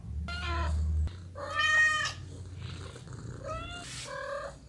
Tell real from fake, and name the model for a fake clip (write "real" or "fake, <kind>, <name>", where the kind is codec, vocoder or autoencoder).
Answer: real